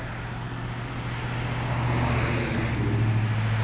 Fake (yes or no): no